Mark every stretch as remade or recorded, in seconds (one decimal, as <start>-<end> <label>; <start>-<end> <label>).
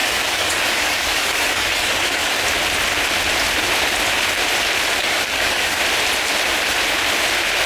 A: 0.0-2.4 remade; 2.4-5.0 recorded; 5.0-5.8 remade; 5.8-7.7 recorded